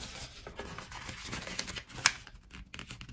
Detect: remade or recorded recorded